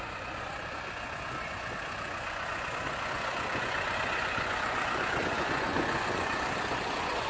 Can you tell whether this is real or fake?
fake